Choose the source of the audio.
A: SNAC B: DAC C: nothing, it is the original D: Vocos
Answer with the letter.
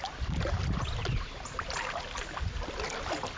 C